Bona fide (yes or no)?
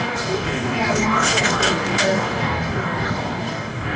no